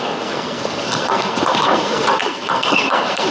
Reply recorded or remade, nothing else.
remade